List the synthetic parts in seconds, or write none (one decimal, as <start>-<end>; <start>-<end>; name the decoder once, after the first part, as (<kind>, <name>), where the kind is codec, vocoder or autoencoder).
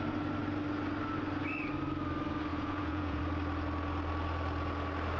2.5-3.2 (vocoder, Vocos)